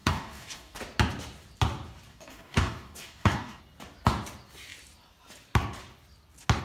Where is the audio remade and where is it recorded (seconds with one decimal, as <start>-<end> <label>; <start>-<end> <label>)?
0.0-0.8 remade; 0.8-2.1 recorded; 2.1-3.6 remade; 3.6-6.6 recorded